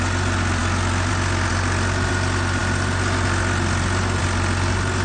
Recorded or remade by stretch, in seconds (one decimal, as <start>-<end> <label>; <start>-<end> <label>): 0.0-5.0 recorded